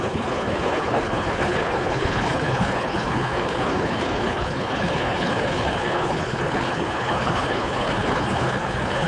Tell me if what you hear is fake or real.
fake